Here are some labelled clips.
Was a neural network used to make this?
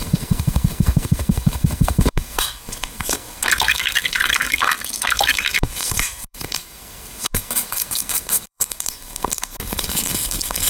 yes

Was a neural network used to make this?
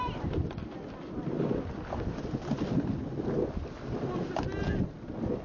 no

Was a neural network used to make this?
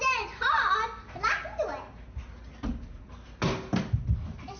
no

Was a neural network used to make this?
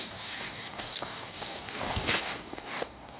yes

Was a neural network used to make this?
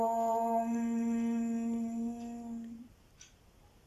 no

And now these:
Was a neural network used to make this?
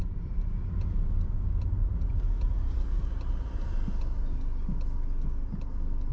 no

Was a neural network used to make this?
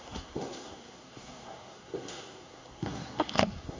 yes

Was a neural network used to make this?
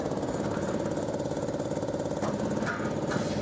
no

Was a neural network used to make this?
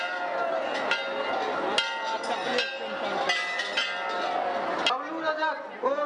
no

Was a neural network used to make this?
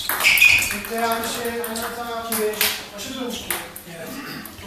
no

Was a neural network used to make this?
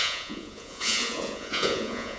yes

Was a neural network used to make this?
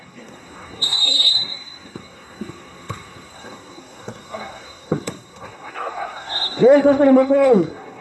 yes